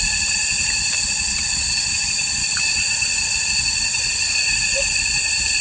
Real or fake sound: real